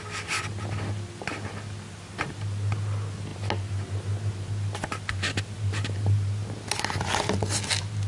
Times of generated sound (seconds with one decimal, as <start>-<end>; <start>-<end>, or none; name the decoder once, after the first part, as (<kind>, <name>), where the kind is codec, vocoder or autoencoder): none

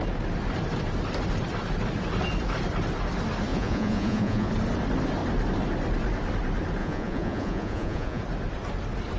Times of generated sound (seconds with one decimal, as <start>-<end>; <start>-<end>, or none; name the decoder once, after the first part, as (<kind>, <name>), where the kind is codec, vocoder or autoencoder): 3.5-4.5 (vocoder, Vocos); 6.8-8.2

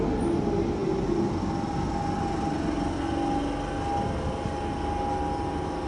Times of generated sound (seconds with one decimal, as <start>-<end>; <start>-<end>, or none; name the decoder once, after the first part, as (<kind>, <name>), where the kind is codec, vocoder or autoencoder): none

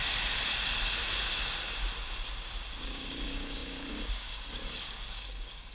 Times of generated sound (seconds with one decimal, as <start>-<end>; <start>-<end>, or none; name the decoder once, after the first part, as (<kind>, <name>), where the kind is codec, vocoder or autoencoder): 2.7-5.7 (codec, DAC)

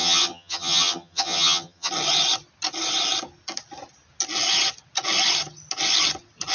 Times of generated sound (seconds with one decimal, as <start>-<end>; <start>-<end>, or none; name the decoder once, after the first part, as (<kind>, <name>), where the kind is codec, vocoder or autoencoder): 0.0-1.9 (vocoder, HiFi-GAN)